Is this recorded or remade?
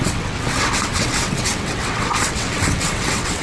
remade